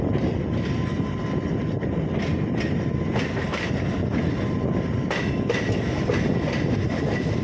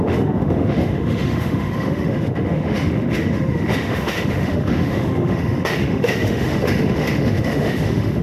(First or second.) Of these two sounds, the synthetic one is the second